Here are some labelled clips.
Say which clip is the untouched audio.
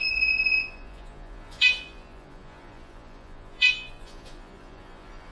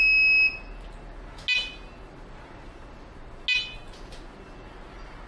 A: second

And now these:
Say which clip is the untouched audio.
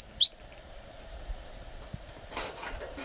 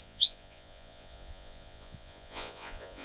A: first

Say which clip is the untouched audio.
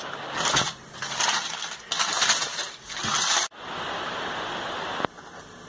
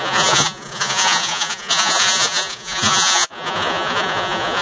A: first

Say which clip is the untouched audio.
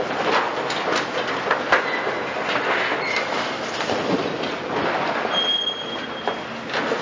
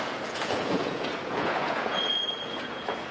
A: first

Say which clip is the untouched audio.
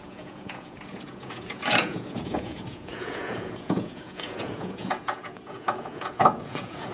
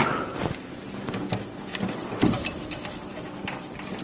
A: second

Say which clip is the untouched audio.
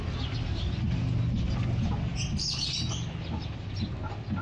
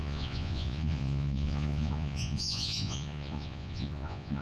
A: first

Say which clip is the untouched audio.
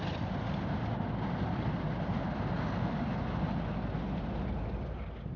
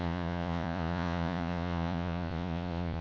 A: first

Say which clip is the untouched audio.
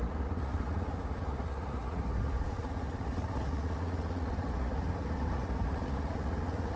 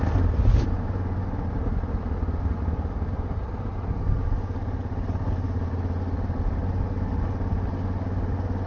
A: second